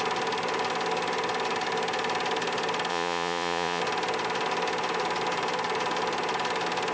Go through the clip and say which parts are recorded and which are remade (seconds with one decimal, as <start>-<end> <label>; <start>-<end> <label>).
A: 0.0-2.9 recorded; 2.9-3.8 remade; 3.8-6.9 recorded